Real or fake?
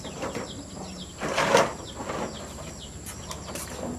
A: real